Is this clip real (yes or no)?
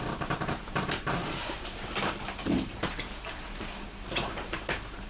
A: no